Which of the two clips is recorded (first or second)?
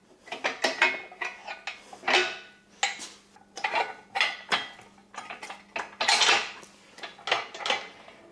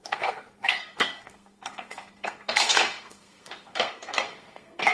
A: first